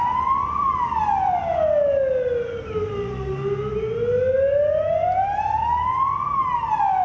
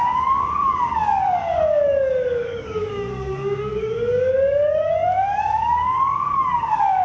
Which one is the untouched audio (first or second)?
first